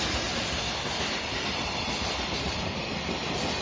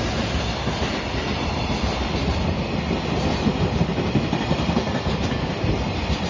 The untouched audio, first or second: second